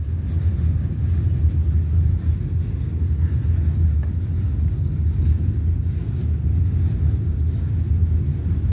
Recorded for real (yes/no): yes